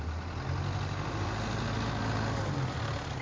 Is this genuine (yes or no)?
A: yes